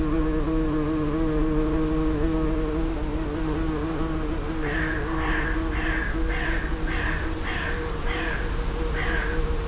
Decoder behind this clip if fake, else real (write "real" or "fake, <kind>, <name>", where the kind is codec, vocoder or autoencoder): real